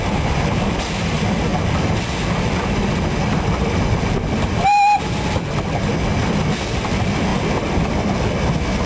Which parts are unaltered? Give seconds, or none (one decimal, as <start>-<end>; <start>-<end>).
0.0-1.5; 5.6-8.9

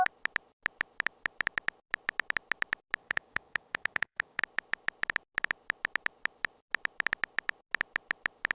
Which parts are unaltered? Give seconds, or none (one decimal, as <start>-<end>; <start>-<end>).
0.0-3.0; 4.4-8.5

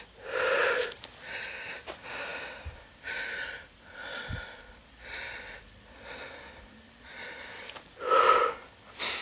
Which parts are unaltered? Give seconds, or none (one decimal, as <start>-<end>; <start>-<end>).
0.0-2.3; 7.4-9.2

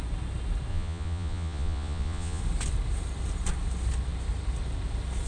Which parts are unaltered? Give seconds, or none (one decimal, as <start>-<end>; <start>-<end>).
0.0-0.7; 2.4-5.3

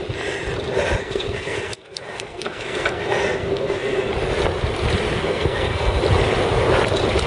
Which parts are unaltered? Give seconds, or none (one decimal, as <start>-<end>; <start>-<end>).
0.0-1.0; 4.1-5.2; 6.0-7.3

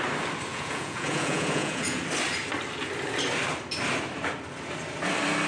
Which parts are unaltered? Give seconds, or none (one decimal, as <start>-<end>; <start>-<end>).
0.0-0.5; 2.0-5.5